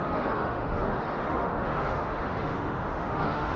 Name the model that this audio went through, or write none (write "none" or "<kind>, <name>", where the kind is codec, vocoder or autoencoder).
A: autoencoder, DAC-VAE